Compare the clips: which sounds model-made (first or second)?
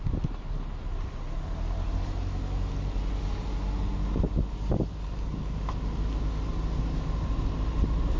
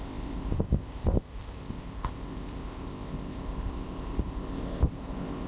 second